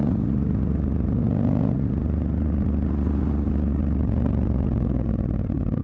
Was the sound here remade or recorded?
remade